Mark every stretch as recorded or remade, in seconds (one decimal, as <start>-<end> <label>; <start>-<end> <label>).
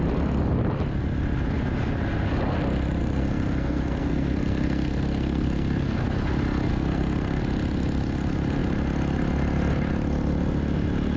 0.0-3.0 recorded; 3.0-6.1 remade; 6.1-6.7 recorded; 6.7-7.4 remade; 7.4-11.2 recorded